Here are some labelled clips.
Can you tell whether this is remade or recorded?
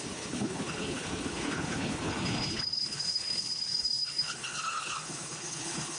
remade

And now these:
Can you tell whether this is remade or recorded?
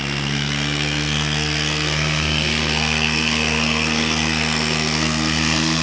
remade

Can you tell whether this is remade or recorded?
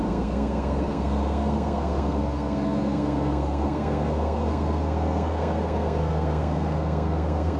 remade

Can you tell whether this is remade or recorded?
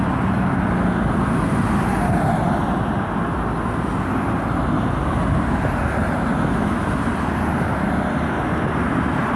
recorded